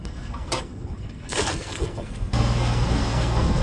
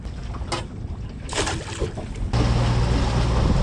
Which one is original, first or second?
second